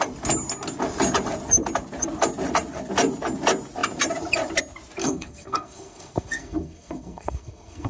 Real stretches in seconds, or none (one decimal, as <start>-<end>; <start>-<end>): 0.0-5.0